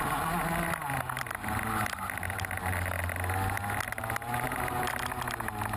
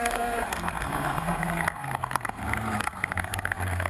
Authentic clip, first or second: first